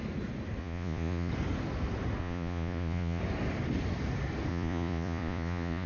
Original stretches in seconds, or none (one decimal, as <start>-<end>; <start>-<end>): 0.0-0.6; 1.3-2.2; 3.2-4.5